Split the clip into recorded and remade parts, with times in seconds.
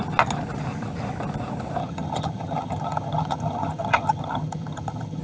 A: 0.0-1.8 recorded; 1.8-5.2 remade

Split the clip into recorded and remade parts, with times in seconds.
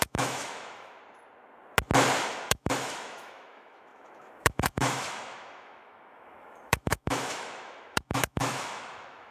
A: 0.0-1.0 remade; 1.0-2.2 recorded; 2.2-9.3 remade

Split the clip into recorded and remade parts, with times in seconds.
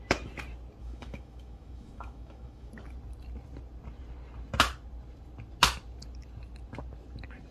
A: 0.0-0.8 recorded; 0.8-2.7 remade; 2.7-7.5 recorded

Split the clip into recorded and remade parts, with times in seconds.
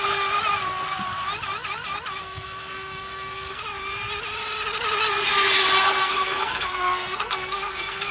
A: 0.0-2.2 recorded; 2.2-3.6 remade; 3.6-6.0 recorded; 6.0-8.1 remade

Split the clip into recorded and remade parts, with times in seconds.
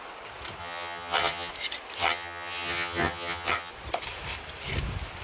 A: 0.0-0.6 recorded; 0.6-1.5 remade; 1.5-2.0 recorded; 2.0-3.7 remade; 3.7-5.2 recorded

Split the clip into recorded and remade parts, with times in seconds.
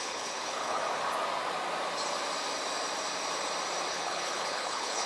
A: 0.0-0.8 remade; 0.8-3.9 recorded; 3.9-5.1 remade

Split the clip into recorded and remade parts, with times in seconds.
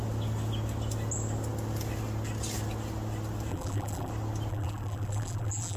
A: 0.0-3.5 recorded; 3.5-4.1 remade; 4.1-4.5 recorded; 4.5-5.8 remade